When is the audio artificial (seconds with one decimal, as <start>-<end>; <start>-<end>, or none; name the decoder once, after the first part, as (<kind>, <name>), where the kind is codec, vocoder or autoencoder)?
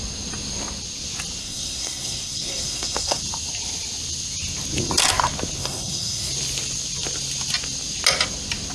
1.4-3.2 (codec, SNAC); 5.6-6.3